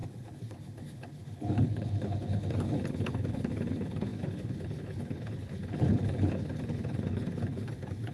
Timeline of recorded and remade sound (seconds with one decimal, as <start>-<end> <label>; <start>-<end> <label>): 0.0-8.1 remade